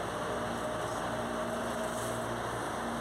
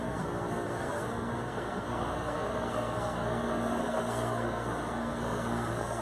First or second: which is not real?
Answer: second